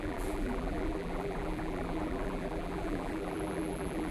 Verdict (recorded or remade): remade